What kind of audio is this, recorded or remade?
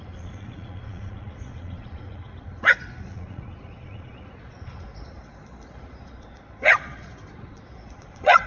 remade